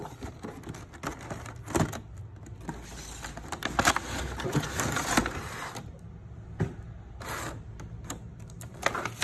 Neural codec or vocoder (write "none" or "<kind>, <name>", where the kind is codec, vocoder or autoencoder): none